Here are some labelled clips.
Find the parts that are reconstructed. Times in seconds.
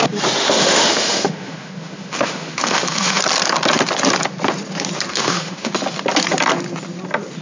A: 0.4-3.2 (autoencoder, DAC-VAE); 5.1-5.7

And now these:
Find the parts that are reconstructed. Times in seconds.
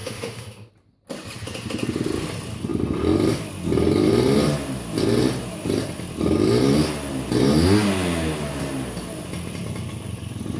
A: 0.0-0.7 (autoencoder, DAC-VAE)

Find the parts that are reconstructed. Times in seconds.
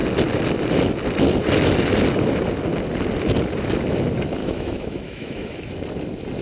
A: 4.4-5.7 (autoencoder, DAC-VAE)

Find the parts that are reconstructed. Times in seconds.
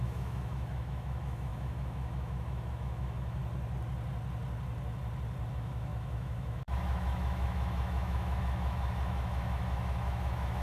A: 0.0-3.4 (autoencoder, DAC-VAE); 5.5-10.6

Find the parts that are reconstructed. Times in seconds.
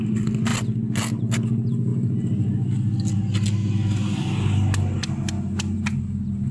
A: none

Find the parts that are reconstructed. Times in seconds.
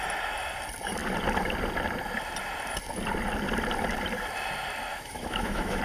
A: 4.9-5.8 (autoencoder, DAC-VAE)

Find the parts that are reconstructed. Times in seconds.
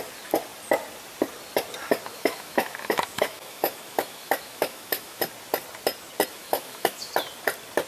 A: 2.1-5.2 (autoencoder, DAC-VAE); 6.3-7.1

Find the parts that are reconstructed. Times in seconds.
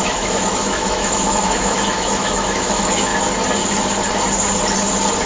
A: 0.0-3.1 (autoencoder, DAC-VAE)